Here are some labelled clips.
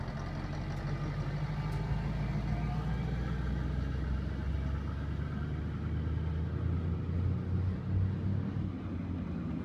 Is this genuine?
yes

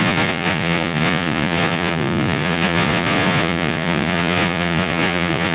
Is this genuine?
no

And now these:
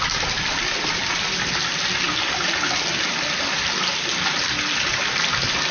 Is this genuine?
yes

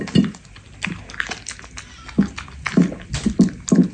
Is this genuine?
yes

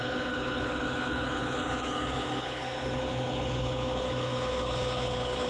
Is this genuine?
no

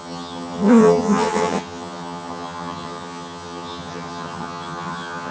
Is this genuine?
no